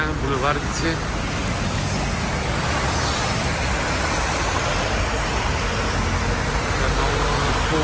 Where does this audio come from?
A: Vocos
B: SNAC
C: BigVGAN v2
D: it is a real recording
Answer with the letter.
D